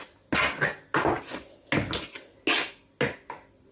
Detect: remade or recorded recorded